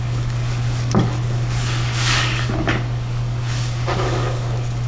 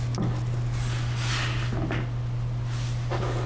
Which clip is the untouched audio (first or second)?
second